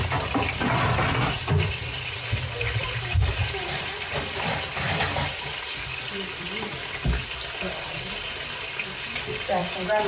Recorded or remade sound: remade